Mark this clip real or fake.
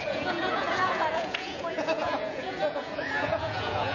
fake